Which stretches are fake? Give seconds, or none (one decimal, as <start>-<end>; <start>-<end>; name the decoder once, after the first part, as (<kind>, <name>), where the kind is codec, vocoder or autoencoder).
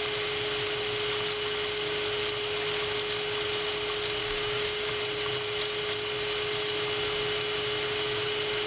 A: 4.2-4.9 (codec, DAC)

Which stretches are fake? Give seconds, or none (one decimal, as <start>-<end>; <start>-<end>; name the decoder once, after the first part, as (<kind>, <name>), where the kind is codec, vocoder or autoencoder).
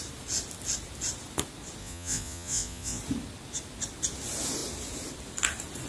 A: 1.8-3.0 (vocoder, Vocos)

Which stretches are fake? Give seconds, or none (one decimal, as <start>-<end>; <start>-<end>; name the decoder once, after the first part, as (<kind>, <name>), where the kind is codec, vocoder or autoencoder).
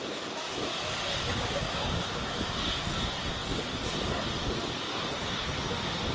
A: 1.3-2.2 (codec, DAC)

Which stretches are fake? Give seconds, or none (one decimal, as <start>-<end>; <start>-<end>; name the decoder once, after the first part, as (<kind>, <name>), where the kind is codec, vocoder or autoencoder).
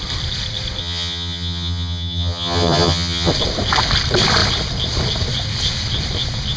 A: 0.8-3.3 (vocoder, HiFi-GAN)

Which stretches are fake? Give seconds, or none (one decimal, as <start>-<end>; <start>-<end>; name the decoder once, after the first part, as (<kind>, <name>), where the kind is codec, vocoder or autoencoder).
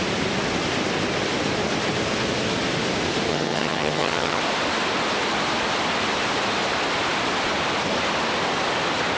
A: 3.3-4.4 (vocoder, HiFi-GAN)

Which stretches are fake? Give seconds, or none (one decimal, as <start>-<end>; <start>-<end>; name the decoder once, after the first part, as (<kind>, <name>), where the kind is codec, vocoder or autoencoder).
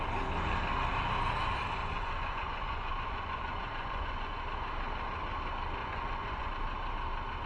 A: 1.8-4.4 (vocoder, Vocos); 5.8-6.5